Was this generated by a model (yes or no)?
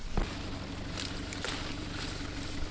no